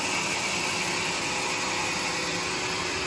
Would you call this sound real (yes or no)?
yes